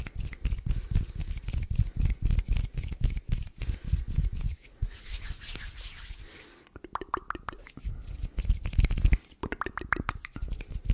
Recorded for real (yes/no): yes